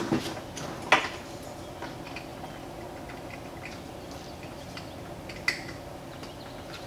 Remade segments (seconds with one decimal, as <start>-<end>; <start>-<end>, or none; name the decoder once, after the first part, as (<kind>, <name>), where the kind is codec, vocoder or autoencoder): none